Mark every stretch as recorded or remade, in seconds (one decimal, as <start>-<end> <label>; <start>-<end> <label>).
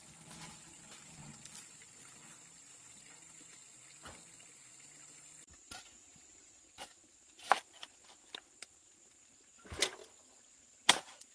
0.0-11.3 recorded